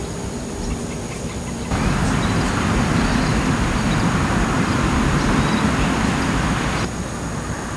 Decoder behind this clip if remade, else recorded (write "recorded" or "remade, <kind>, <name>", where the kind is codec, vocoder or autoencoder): recorded